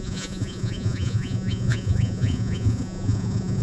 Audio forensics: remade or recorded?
remade